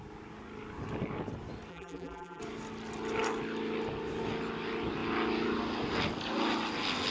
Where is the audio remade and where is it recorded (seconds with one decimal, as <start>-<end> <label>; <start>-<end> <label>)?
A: 0.0-1.7 recorded; 1.7-2.4 remade; 2.4-7.1 recorded